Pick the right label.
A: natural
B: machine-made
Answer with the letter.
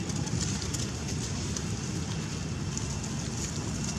A